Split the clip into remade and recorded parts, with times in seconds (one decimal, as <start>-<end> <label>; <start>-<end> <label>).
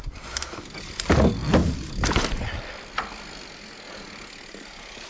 0.0-1.6 recorded; 1.6-2.6 remade; 2.6-5.1 recorded